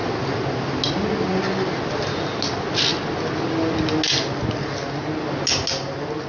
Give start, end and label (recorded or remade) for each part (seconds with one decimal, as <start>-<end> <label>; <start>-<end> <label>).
0.0-6.3 recorded

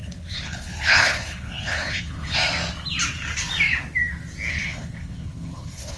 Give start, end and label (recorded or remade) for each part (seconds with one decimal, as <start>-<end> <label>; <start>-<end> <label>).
0.0-2.4 remade; 2.4-4.5 recorded; 4.5-6.0 remade